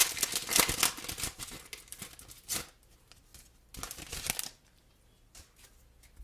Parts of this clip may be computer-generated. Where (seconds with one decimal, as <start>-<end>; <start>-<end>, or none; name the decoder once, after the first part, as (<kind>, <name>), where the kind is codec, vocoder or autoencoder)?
none